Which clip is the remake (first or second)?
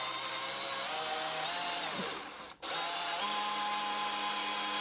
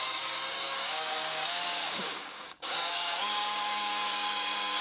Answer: second